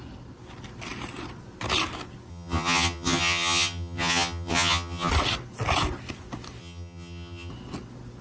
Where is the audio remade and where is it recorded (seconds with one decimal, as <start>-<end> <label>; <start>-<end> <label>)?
0.0-2.3 recorded; 2.3-5.1 remade; 5.1-6.6 recorded; 6.6-7.5 remade; 7.5-8.2 recorded